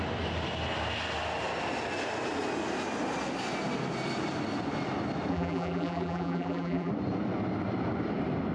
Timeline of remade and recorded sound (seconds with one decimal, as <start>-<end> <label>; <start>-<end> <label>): 0.0-5.3 recorded; 5.3-6.9 remade; 6.9-8.5 recorded